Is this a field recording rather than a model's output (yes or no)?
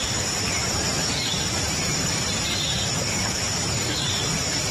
no